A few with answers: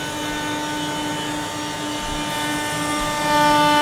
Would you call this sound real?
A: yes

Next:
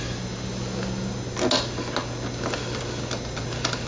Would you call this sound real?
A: yes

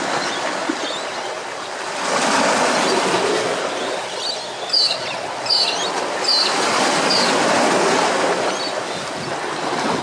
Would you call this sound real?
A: yes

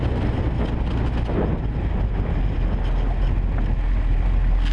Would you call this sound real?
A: yes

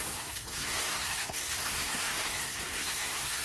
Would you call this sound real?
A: no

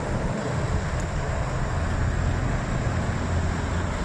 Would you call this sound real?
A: yes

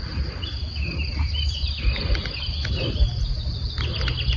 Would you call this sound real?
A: yes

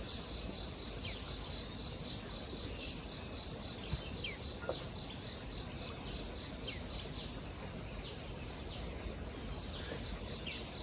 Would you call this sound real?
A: yes